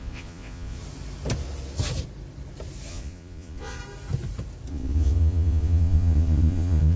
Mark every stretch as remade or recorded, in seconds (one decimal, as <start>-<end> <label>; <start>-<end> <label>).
0.0-0.8 remade; 0.8-2.9 recorded; 2.9-3.8 remade; 3.8-4.7 recorded; 4.7-7.0 remade